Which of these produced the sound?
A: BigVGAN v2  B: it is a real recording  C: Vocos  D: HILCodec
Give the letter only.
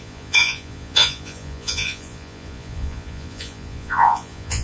C